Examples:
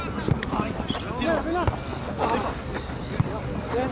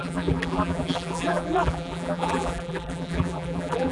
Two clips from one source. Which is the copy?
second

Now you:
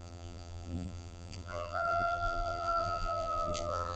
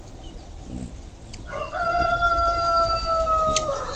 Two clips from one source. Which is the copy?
first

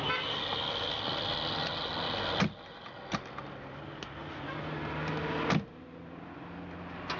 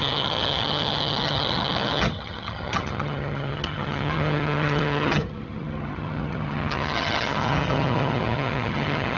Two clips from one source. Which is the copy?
second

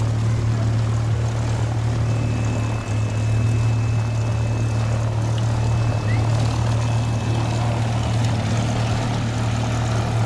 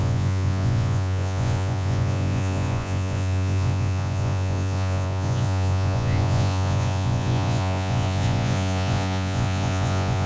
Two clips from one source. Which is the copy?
second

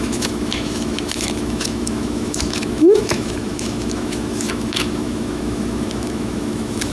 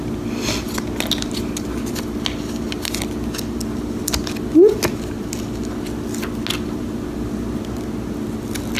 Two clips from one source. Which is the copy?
first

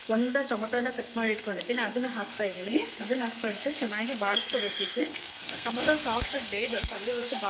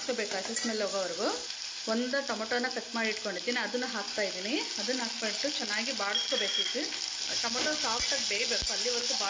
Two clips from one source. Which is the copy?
first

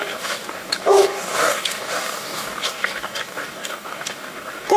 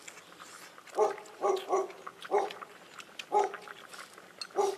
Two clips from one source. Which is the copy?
first